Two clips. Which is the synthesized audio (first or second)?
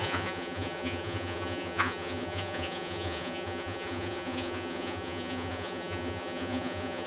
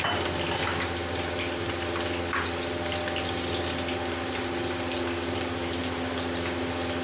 first